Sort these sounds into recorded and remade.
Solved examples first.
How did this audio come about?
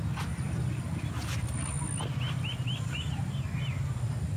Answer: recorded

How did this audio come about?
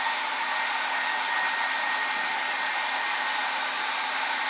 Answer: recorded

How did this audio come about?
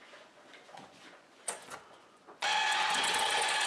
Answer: remade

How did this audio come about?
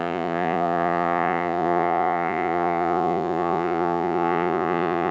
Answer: remade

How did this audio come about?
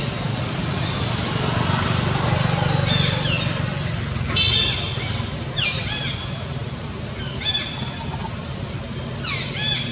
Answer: recorded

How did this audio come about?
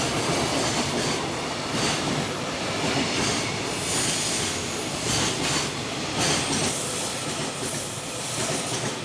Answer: recorded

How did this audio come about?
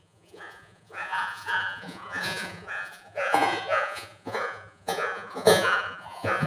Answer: remade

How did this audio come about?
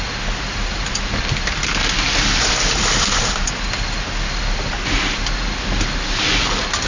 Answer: recorded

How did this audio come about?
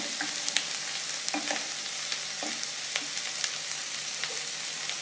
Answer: recorded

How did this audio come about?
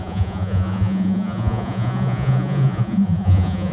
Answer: remade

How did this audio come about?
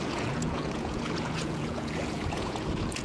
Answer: remade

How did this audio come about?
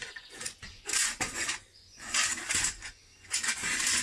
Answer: remade